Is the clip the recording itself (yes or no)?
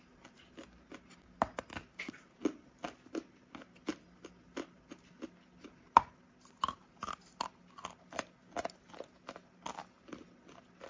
yes